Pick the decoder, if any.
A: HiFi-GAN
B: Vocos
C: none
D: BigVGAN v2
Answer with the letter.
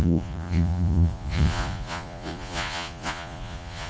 B